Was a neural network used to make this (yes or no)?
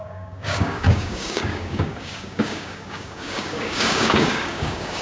yes